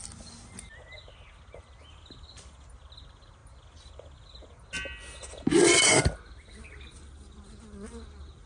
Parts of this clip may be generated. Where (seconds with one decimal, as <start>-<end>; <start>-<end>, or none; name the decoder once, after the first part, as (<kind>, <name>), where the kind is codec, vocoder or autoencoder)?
none